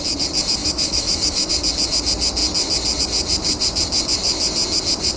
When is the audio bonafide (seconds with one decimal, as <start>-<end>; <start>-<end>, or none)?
0.0-0.6; 1.5-5.2